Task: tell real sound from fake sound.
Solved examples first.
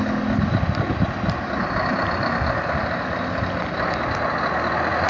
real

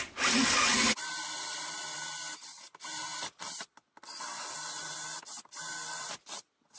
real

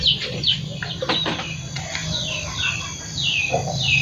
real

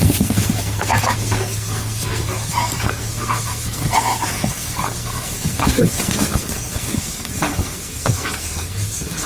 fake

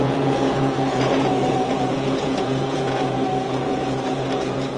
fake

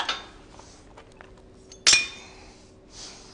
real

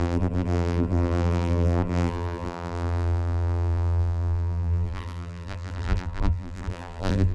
fake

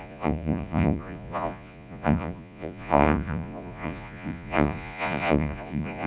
fake